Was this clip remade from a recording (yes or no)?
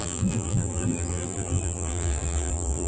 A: yes